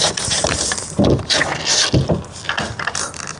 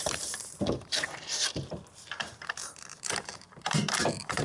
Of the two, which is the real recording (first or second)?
first